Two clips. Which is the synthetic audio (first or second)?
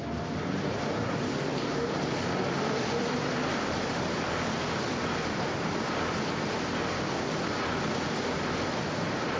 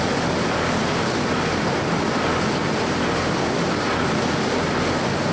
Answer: first